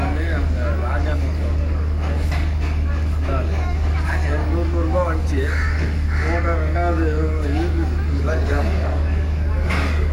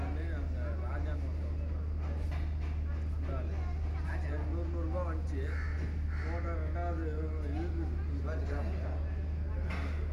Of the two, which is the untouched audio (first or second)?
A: second